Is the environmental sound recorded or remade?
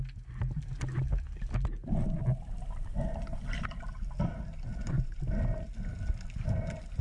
recorded